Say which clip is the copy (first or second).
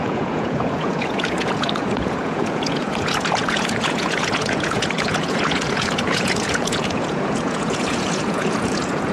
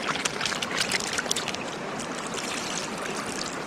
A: first